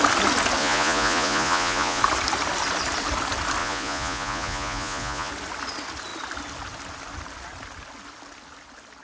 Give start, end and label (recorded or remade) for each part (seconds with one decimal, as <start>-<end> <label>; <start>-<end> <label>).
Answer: 0.0-0.6 recorded; 0.6-2.0 remade; 2.0-3.6 recorded; 3.6-5.3 remade; 5.3-9.0 recorded